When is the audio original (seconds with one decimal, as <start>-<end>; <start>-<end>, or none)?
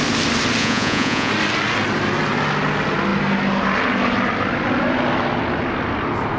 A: 0.0-0.6; 1.3-6.4